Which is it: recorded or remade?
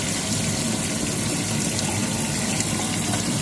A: recorded